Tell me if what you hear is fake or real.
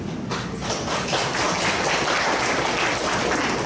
real